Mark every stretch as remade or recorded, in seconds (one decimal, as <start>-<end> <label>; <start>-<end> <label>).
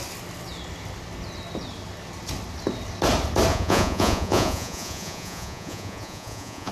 0.0-3.5 recorded; 3.5-6.7 remade